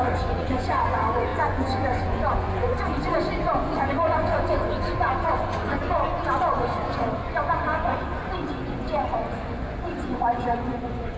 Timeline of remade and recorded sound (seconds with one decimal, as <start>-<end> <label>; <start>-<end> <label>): 0.0-11.2 remade